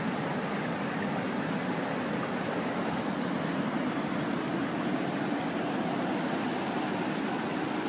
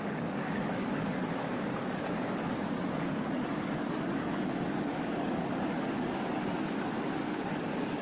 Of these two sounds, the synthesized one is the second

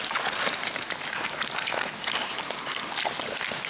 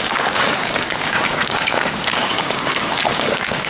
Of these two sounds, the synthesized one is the second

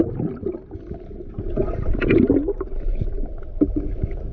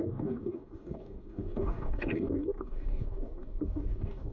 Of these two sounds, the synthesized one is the second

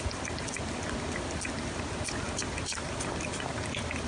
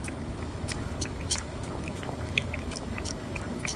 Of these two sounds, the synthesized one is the second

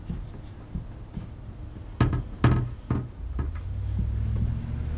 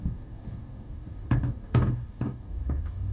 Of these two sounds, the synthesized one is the second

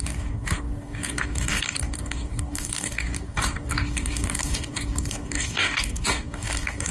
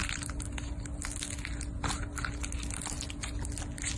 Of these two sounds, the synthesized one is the first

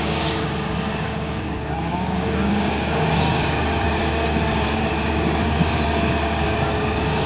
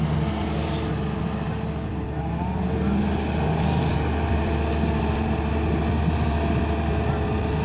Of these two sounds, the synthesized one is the first